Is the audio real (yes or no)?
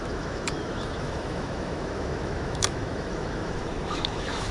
no